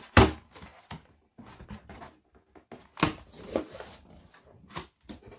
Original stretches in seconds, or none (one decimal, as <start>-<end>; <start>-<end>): 0.0-5.4